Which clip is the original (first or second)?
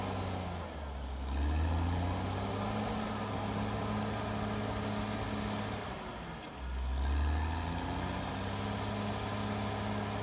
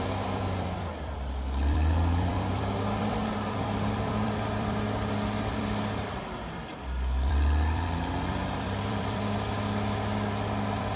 first